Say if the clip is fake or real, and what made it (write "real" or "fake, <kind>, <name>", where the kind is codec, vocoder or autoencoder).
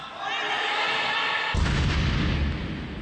real